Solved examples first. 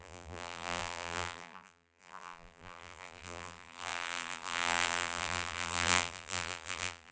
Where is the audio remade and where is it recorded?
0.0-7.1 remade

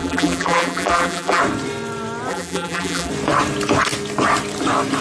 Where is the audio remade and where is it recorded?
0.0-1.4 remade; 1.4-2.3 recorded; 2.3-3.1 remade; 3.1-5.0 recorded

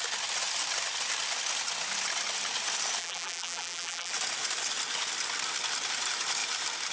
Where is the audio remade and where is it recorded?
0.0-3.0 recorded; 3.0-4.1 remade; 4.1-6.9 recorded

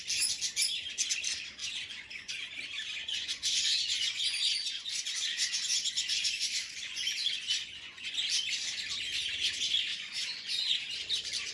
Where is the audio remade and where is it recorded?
0.0-1.6 recorded; 1.6-2.3 remade; 2.3-3.0 recorded; 3.0-8.1 remade; 8.1-9.9 recorded; 9.9-10.7 remade; 10.7-11.5 recorded

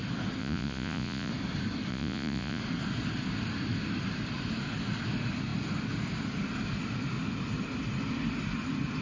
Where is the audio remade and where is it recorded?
0.0-0.4 recorded; 0.4-1.3 remade; 1.3-1.9 recorded; 1.9-2.6 remade; 2.6-9.0 recorded